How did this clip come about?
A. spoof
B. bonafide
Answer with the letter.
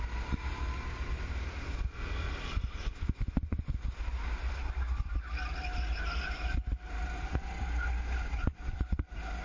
B